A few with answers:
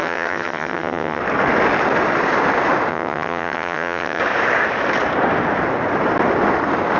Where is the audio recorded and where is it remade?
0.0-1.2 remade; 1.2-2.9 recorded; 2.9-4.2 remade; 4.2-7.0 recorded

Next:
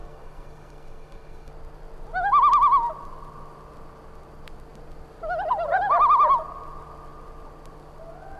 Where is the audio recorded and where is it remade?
0.0-1.5 remade; 1.5-8.4 recorded

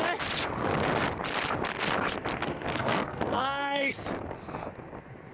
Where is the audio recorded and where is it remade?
0.0-2.5 recorded; 2.5-3.9 remade; 3.9-5.3 recorded

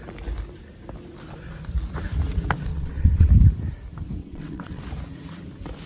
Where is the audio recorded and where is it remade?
0.0-2.7 recorded; 2.7-3.3 remade; 3.3-4.2 recorded; 4.2-4.8 remade; 4.8-5.9 recorded

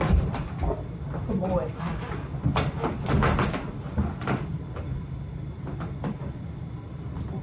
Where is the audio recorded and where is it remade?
0.0-7.4 recorded

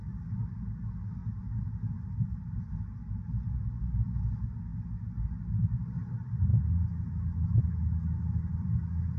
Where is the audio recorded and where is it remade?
0.0-9.2 recorded

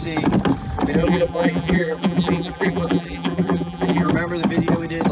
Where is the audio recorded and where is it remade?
0.0-1.0 recorded; 1.0-4.1 remade; 4.1-5.1 recorded